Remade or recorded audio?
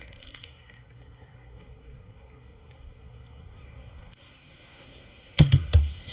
remade